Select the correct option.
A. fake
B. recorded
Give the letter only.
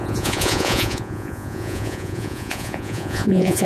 A